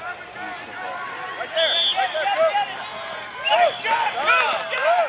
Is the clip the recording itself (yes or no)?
yes